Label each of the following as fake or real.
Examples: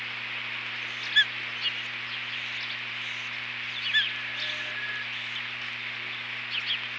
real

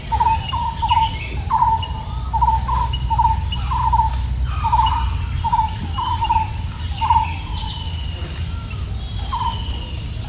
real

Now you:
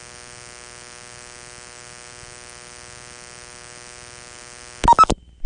real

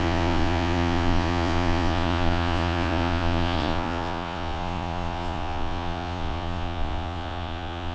fake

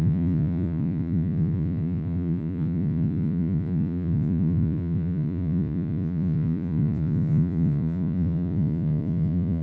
fake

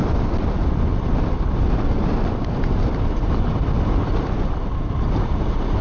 real